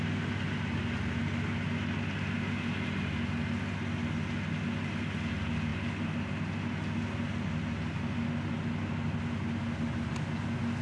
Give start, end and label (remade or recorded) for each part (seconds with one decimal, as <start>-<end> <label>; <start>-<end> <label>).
0.0-10.8 recorded